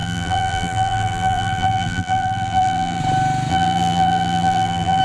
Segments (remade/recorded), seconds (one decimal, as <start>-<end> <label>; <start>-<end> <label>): 0.0-3.0 remade; 3.0-3.5 recorded; 3.5-5.0 remade